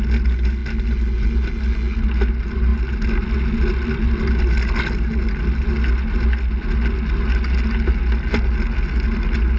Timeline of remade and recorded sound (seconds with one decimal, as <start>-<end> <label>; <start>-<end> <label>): 0.0-9.6 recorded

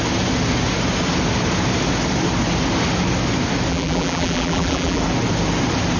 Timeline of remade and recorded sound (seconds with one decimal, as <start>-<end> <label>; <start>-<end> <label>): 0.0-3.7 recorded; 3.7-5.0 remade; 5.0-6.0 recorded

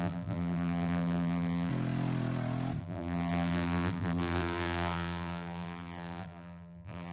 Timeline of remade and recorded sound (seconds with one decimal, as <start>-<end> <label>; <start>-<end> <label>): 0.0-1.7 remade; 1.7-2.8 recorded; 2.8-7.1 remade

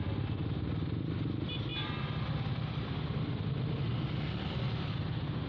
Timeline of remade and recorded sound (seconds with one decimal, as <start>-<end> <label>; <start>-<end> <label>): 0.0-5.5 recorded

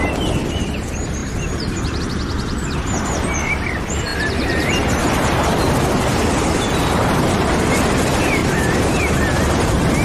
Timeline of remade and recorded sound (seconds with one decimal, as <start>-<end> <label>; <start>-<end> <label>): 0.0-1.2 recorded; 1.2-2.0 remade; 2.0-4.1 recorded; 4.1-6.6 remade; 6.6-8.4 recorded; 8.4-9.1 remade; 9.1-10.0 recorded

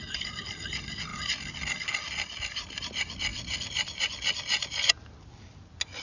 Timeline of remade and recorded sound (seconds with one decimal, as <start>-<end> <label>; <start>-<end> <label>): 0.0-6.0 recorded

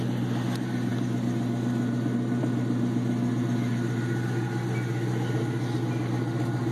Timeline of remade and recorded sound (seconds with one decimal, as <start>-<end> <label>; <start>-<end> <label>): 0.0-6.7 recorded